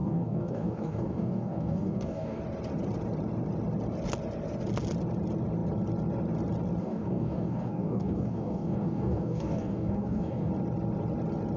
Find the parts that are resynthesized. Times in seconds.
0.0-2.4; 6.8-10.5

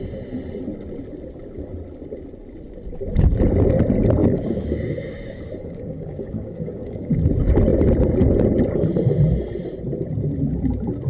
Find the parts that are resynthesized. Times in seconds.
4.2-7.1